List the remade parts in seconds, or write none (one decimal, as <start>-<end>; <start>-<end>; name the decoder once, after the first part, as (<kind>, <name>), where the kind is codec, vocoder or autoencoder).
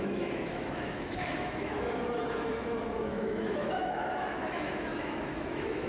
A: 0.0-5.9 (autoencoder, DAC-VAE)